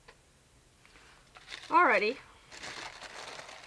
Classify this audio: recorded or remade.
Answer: recorded